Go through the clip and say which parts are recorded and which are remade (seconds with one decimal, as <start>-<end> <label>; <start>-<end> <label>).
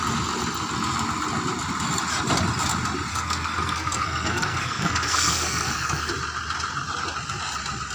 0.0-3.1 recorded; 3.1-6.1 remade; 6.1-7.9 recorded